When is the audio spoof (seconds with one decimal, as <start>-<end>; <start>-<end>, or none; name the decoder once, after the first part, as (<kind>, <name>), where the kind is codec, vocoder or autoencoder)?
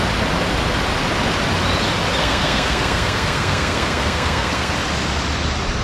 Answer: 2.2-4.7 (codec, SNAC)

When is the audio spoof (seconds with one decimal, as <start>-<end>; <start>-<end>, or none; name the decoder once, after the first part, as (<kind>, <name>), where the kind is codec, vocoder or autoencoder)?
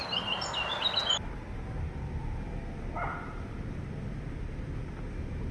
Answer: none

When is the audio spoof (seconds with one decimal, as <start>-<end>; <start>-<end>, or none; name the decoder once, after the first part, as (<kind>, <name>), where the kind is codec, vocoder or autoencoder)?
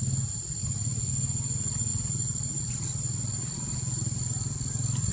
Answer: none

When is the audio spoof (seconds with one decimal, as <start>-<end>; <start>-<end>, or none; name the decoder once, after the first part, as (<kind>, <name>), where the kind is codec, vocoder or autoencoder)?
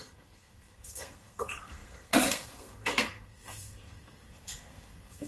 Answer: 0.0-5.3 (codec, SNAC)